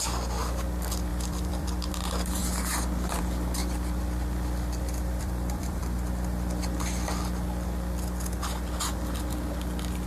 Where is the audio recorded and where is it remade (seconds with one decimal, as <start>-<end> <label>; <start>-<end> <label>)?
0.0-1.1 recorded; 1.1-1.9 remade; 1.9-3.6 recorded; 3.6-5.8 remade; 5.8-10.1 recorded